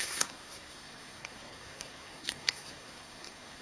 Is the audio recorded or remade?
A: remade